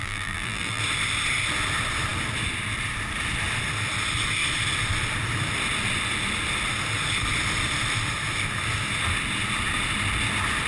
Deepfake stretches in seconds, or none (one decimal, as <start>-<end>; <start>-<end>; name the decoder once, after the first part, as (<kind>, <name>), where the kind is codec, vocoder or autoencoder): 0.0-0.8 (vocoder, BigVGAN v2)